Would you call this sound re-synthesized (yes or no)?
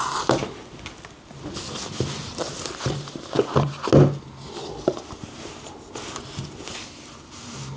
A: no